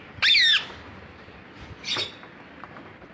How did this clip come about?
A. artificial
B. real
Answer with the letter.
B